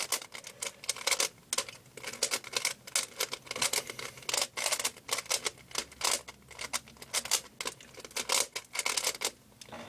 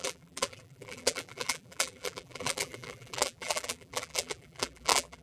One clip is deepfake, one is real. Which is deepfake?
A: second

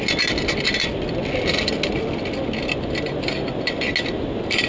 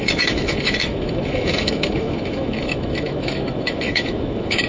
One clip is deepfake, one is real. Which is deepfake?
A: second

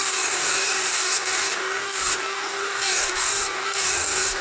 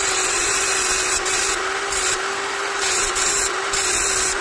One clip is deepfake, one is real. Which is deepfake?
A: first